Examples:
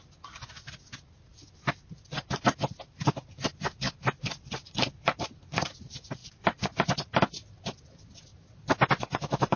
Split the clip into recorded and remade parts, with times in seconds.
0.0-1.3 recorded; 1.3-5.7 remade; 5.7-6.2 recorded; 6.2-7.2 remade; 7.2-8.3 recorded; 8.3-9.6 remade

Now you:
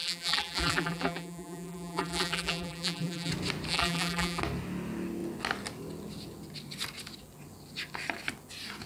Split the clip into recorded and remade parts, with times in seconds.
0.0-3.3 remade; 3.3-3.7 recorded; 3.7-4.4 remade; 4.4-8.9 recorded

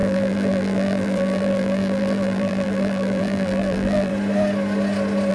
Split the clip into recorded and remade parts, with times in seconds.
0.0-4.1 remade; 4.1-5.3 recorded

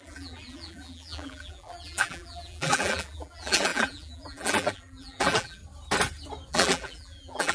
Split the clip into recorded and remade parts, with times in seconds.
0.0-5.6 remade; 5.6-6.5 recorded; 6.5-7.5 remade

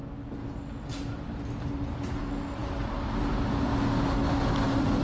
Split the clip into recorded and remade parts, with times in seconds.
0.0-5.0 recorded